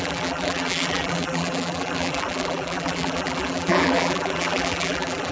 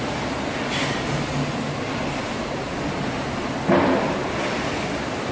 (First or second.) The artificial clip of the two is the first